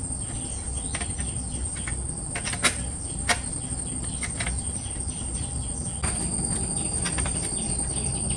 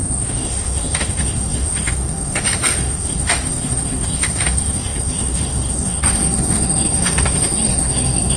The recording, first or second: first